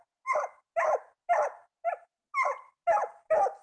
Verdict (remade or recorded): recorded